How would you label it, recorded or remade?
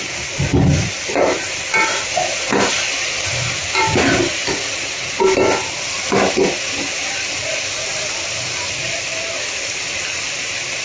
recorded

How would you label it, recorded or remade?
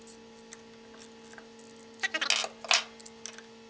recorded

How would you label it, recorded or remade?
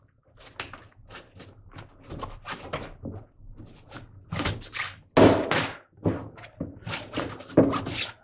recorded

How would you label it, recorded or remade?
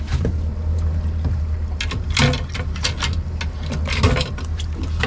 recorded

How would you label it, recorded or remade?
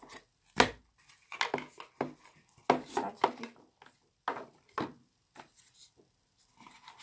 recorded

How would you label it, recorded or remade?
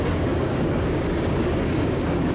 remade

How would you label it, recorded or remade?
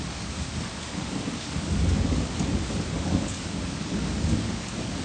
remade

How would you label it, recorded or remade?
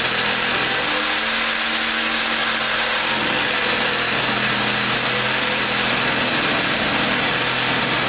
recorded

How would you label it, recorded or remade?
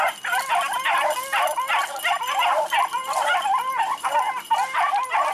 recorded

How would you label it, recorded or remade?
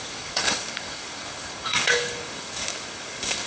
remade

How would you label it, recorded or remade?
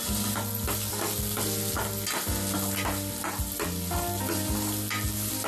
recorded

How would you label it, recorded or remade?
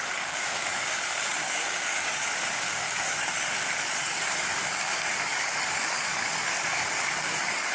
remade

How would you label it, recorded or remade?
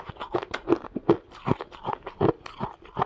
recorded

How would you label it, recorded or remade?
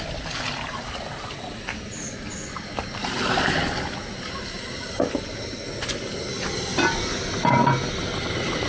recorded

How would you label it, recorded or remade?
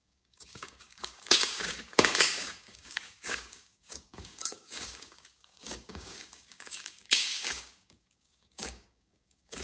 remade